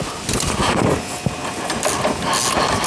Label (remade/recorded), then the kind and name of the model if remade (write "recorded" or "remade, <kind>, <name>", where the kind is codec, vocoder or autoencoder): recorded